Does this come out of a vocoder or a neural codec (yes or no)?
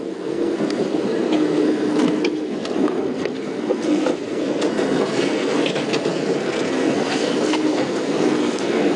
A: yes